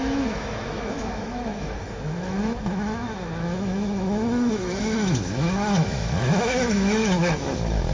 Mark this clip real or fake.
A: fake